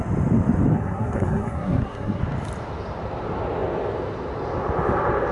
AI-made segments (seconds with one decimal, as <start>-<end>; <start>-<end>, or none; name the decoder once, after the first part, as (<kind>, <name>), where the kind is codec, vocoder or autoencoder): 0.7-2.2 (codec, SNAC)